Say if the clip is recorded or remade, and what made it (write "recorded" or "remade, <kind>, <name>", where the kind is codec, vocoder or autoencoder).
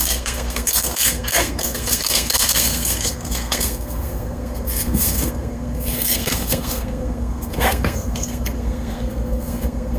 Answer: remade, codec, SNAC